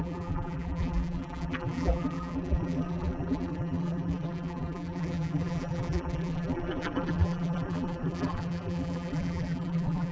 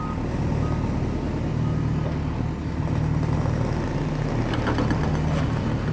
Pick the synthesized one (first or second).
first